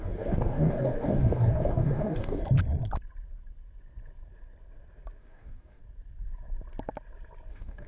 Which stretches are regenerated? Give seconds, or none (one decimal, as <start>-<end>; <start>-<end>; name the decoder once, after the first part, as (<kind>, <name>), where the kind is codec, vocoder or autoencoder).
0.0-2.4 (codec, DAC); 5.2-5.8; 7.5-7.9